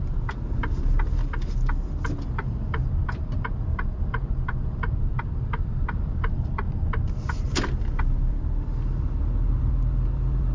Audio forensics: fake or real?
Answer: fake